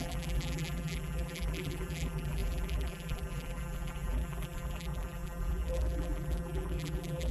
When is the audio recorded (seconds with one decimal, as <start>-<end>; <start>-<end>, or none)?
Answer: none